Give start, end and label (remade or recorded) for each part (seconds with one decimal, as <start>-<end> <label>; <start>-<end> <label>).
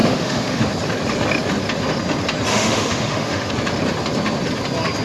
0.0-0.6 remade; 0.6-2.5 recorded; 2.5-3.5 remade; 3.5-5.0 recorded